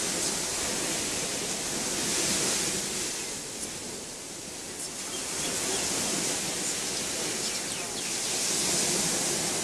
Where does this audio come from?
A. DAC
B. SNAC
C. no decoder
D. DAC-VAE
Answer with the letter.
C